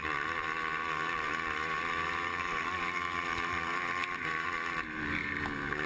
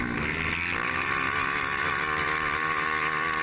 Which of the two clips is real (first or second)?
second